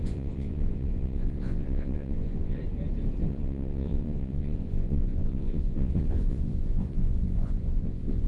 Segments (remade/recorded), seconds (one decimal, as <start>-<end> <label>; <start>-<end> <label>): 0.0-2.6 remade; 2.6-3.3 recorded; 3.3-8.3 remade

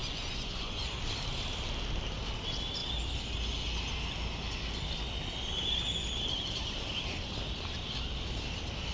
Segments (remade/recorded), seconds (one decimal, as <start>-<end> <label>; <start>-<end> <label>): 0.0-1.0 remade; 1.0-8.9 recorded

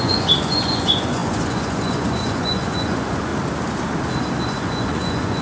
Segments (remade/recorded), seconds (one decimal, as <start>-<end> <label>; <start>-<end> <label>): 0.0-3.3 remade; 3.3-4.4 recorded; 4.4-5.4 remade

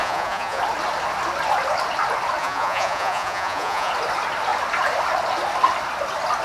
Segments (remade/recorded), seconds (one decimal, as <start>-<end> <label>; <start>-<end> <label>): 0.0-0.6 remade; 0.6-2.4 recorded; 2.4-3.9 remade; 3.9-6.4 recorded

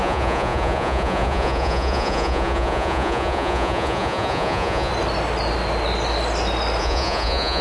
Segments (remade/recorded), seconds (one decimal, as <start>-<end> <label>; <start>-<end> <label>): 0.0-4.9 remade; 4.9-6.8 recorded; 6.8-7.6 remade

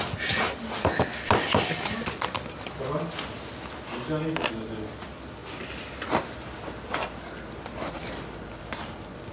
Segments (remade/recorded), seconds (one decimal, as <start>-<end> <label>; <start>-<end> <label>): 0.0-9.3 recorded

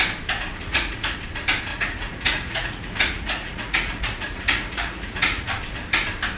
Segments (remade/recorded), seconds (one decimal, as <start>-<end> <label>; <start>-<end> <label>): 0.0-0.6 recorded; 0.6-1.2 remade; 1.2-1.7 recorded; 1.7-5.5 remade; 5.5-6.4 recorded